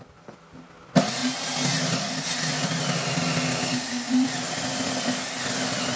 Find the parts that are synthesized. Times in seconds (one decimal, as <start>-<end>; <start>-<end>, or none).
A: 3.5-4.1